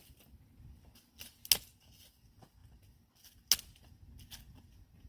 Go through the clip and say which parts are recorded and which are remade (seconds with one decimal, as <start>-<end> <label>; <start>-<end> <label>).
0.0-5.1 recorded

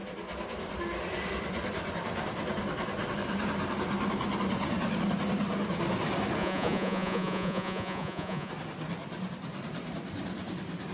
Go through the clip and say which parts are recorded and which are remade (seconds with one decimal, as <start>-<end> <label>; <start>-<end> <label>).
0.0-6.4 recorded; 6.4-8.5 remade; 8.5-10.9 recorded